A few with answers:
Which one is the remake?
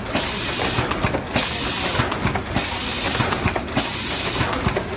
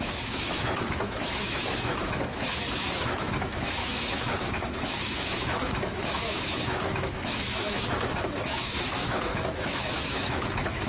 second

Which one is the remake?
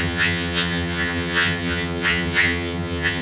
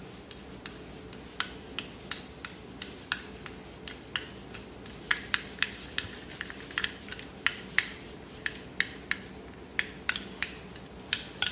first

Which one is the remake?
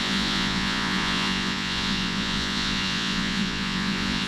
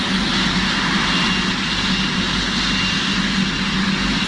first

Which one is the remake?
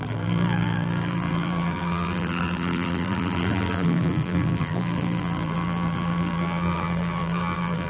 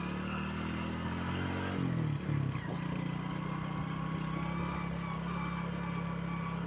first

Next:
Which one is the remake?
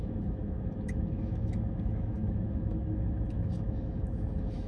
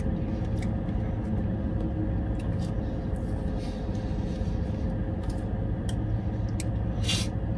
first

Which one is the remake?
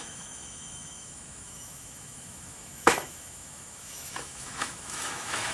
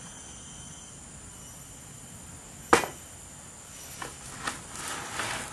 first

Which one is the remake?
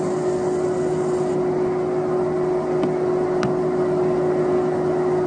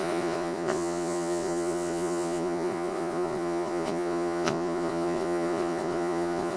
second